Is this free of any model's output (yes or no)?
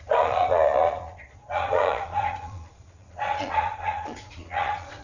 no